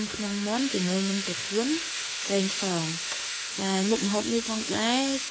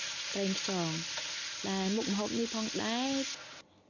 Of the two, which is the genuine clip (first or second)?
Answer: second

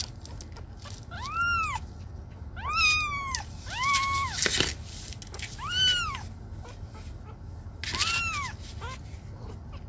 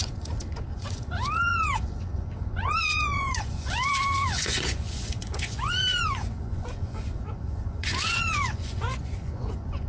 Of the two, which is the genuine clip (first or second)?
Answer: first